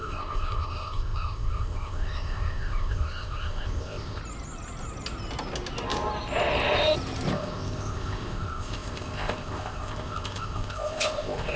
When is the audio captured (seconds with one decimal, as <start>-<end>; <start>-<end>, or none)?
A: 4.2-7.3